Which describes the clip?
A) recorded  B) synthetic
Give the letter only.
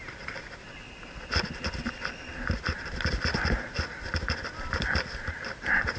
A